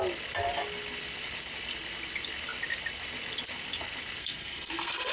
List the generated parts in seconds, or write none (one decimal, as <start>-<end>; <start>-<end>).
4.2-5.1